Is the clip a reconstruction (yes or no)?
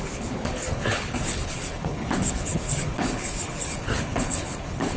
yes